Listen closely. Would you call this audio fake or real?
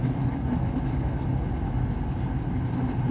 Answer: real